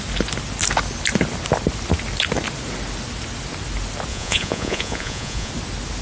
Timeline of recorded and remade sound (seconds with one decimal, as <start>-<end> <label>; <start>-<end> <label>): 0.0-4.1 recorded; 4.1-5.5 remade; 5.5-6.0 recorded